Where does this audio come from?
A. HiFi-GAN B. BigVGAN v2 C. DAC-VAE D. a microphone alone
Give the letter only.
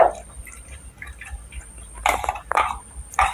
B